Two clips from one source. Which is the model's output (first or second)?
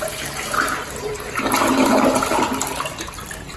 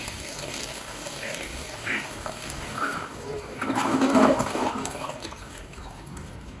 second